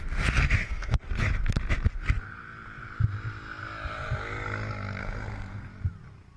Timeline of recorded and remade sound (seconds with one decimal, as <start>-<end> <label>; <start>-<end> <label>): 0.0-0.6 recorded; 0.6-1.1 remade; 1.1-5.0 recorded; 5.0-5.7 remade; 5.7-6.4 recorded